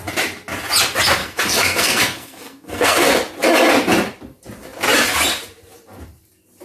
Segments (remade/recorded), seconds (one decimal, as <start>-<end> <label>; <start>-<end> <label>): 0.0-1.2 recorded; 1.2-3.1 remade; 3.1-6.6 recorded